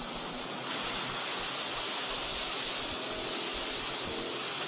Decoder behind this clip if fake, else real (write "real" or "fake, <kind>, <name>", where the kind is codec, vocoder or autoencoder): real